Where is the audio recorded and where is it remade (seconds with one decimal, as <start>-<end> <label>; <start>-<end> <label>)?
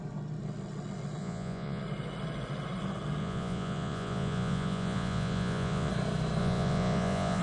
0.0-1.2 recorded; 1.2-1.8 remade; 1.8-3.2 recorded; 3.2-5.9 remade; 5.9-6.4 recorded; 6.4-7.4 remade